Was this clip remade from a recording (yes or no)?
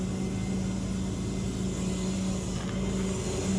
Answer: no